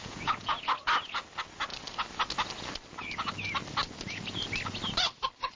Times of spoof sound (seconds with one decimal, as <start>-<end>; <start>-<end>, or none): 0.0-0.7